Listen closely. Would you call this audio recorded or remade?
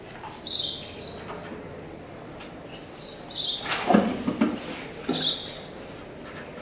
recorded